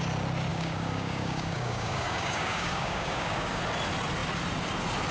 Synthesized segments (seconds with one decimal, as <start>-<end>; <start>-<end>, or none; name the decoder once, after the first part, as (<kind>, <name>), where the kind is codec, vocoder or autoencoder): 0.5-3.6 (codec, DAC)